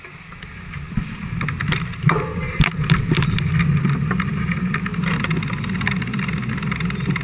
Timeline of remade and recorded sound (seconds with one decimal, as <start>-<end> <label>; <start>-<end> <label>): 0.0-2.3 recorded; 2.3-4.4 remade; 4.4-7.2 recorded